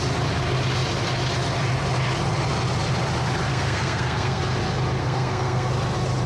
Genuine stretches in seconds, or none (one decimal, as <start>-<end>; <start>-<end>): 0.0-3.5; 4.4-5.0; 5.7-6.3

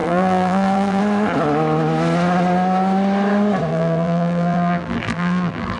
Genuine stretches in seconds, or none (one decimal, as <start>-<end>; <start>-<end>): 1.0-3.7